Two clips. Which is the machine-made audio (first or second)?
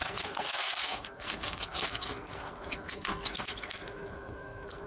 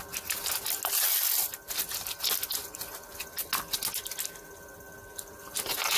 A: first